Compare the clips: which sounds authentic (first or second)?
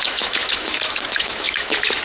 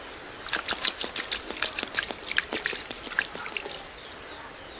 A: second